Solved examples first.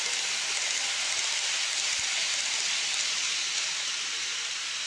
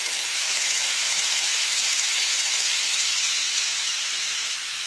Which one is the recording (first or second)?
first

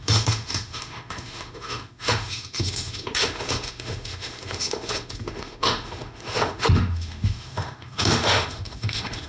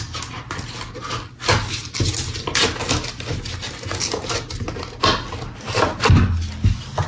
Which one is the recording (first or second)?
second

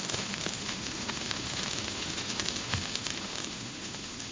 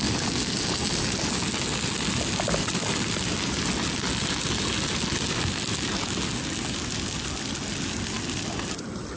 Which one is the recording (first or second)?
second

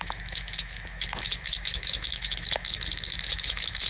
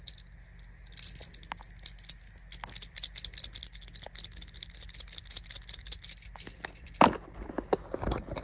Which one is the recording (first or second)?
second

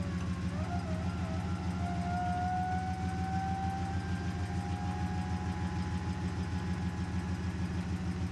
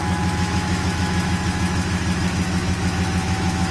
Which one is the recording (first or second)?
first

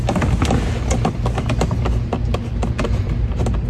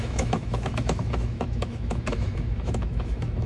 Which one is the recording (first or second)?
first